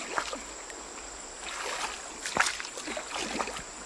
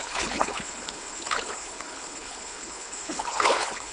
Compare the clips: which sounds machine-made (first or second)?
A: second